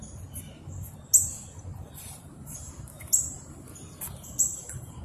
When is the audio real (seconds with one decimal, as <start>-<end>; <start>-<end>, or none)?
0.0-1.7; 2.7-4.5